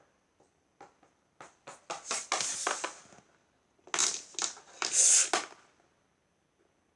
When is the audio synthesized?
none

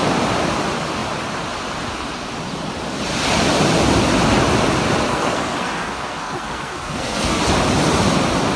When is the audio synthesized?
5.1-7.4 (codec, SNAC)

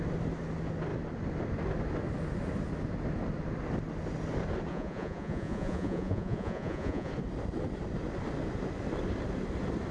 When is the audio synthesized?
4.7-7.1 (vocoder, Vocos)

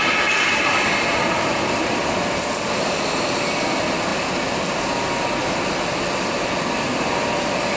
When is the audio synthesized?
0.5-2.0 (vocoder, BigVGAN v2)